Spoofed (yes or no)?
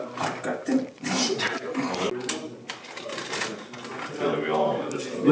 no